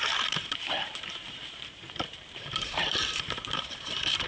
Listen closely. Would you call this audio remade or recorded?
remade